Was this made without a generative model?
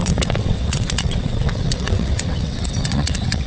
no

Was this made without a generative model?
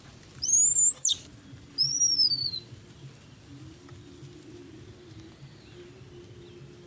yes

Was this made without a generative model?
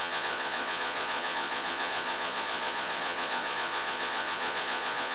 no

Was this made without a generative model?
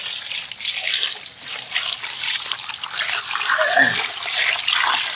yes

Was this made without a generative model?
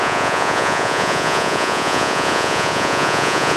no